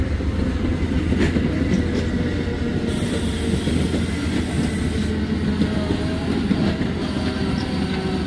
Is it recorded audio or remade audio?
recorded